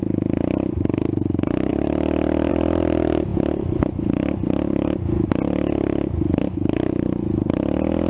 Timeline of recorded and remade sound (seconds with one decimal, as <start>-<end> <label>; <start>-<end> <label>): 0.0-8.1 recorded

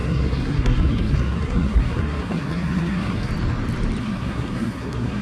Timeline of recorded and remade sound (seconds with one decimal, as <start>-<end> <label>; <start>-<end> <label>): 0.0-3.3 remade; 3.3-4.0 recorded; 4.0-5.2 remade